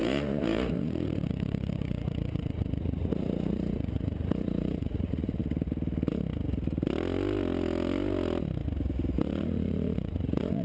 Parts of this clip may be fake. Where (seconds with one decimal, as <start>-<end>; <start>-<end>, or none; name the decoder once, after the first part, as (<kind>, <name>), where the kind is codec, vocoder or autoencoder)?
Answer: 0.0-5.4 (vocoder, Vocos); 9.2-10.6